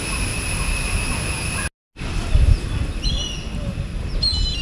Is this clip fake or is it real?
real